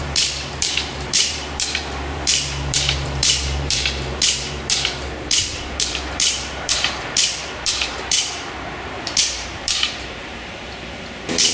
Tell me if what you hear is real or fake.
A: fake